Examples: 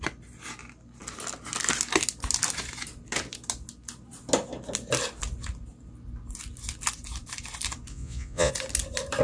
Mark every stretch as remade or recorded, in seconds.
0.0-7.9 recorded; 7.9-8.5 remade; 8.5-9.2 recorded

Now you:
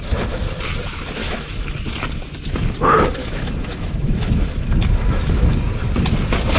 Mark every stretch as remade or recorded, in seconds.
0.0-1.2 recorded; 1.2-1.7 remade; 1.7-3.2 recorded; 3.2-5.6 remade; 5.6-6.6 recorded

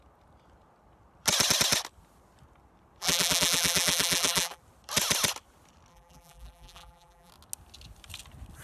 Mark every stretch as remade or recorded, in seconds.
0.0-3.0 recorded; 3.0-4.6 remade; 4.6-5.9 recorded; 5.9-7.3 remade; 7.3-8.6 recorded

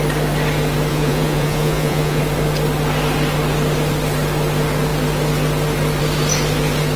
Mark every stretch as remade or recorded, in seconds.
0.0-0.9 recorded; 0.9-2.2 remade; 2.2-7.0 recorded

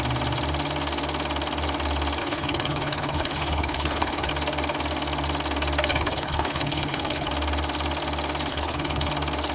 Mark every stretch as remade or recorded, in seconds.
0.0-2.2 recorded; 2.2-4.3 remade; 4.3-5.9 recorded; 5.9-7.3 remade; 7.3-8.5 recorded; 8.5-9.1 remade; 9.1-9.5 recorded

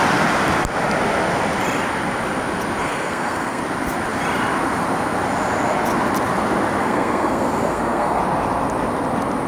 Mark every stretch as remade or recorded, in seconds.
0.0-2.8 recorded; 2.8-3.6 remade; 3.6-6.8 recorded; 6.8-8.2 remade; 8.2-9.5 recorded

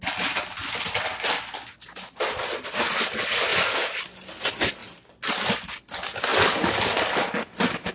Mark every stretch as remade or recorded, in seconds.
0.0-7.9 recorded